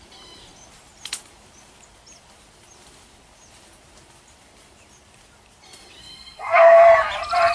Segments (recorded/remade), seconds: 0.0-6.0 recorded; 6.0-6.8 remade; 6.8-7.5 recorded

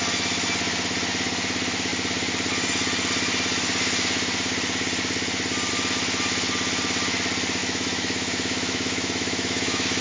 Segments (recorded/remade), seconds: 0.0-7.6 recorded; 7.6-10.0 remade

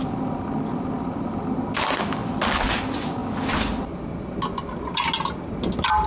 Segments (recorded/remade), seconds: 0.0-6.1 recorded

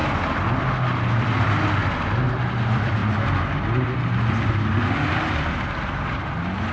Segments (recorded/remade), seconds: 0.0-6.7 recorded

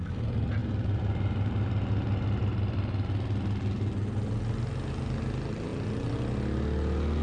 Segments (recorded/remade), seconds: 0.0-7.2 recorded

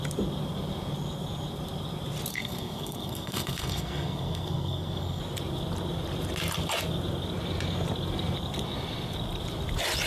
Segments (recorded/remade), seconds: 0.0-2.3 recorded; 2.3-5.2 remade; 5.2-10.1 recorded